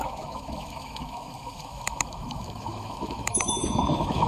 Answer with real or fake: fake